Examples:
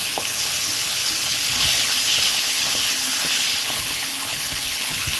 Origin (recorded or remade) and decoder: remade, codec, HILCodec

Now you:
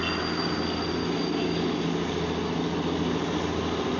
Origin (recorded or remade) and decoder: recorded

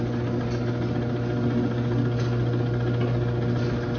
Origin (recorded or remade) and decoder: recorded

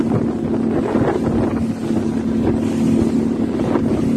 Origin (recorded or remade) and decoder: recorded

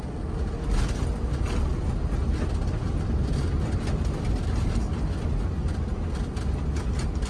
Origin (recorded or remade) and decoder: recorded